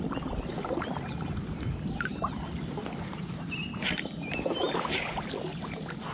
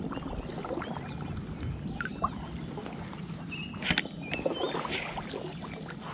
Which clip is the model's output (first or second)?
first